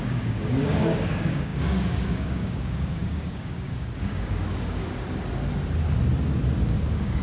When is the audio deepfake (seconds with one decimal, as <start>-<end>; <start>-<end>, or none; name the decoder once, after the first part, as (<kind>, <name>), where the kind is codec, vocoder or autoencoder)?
0.0-4.8 (codec, DAC); 6.7-7.2